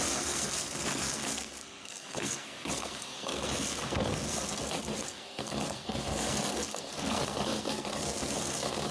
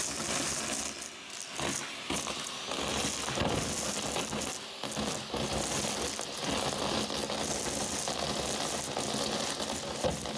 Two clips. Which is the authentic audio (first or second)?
second